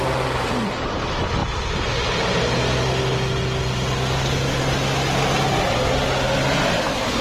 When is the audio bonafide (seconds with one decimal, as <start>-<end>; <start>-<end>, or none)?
0.0-7.2